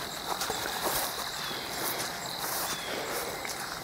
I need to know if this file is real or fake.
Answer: fake